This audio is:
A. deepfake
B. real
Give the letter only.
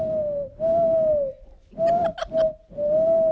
B